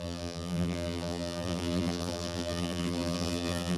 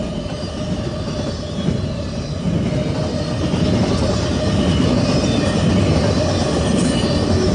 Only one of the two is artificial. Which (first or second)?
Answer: first